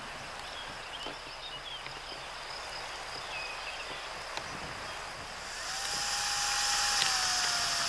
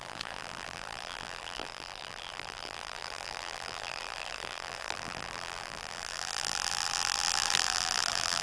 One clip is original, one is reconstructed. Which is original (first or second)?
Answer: first